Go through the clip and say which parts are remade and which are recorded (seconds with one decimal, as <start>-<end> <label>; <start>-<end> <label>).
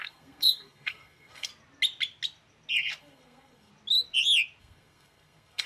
0.0-1.5 remade; 1.5-3.0 recorded; 3.0-3.7 remade; 3.7-4.6 recorded; 4.6-5.7 remade